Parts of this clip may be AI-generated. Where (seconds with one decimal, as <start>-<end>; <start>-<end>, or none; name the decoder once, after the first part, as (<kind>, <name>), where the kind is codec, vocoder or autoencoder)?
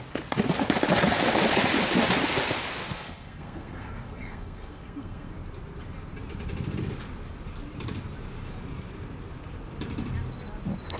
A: 2.8-5.3 (codec, SNAC)